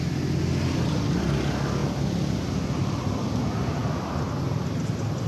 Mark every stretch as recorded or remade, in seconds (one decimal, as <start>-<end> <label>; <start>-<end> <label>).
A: 0.0-5.3 recorded